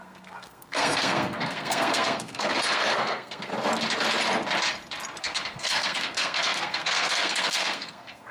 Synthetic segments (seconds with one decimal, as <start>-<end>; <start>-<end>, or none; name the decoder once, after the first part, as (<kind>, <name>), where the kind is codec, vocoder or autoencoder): 0.0-3.5 (codec, SNAC); 5.2-8.3